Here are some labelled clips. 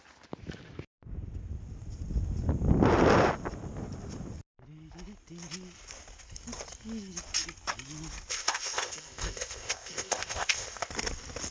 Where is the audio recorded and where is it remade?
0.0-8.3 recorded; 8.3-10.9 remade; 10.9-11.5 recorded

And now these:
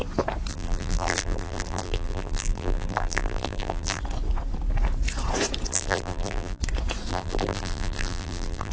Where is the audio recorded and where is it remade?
0.0-0.5 recorded; 0.5-4.0 remade; 4.0-5.7 recorded; 5.7-6.6 remade; 6.6-7.1 recorded; 7.1-8.7 remade

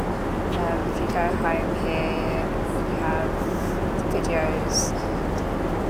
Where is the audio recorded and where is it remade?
0.0-5.9 recorded

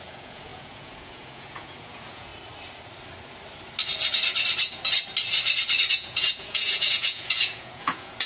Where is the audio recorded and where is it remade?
0.0-2.3 remade; 2.3-5.9 recorded; 5.9-8.3 remade

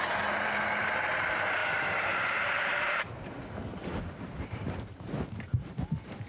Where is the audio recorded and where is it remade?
0.0-1.6 recorded; 1.6-3.1 remade; 3.1-3.7 recorded; 3.7-6.3 remade